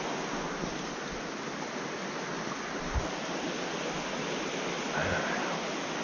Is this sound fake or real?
real